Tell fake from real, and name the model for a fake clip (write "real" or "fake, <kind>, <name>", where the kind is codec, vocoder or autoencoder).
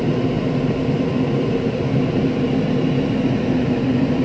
real